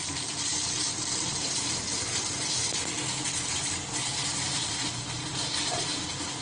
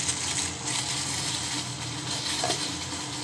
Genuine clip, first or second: second